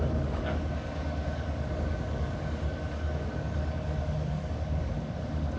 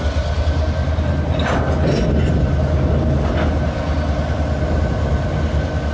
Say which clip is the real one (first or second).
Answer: second